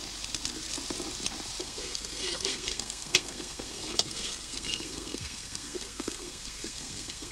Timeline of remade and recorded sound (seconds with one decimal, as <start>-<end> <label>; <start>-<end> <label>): 0.0-1.6 recorded; 1.6-7.3 remade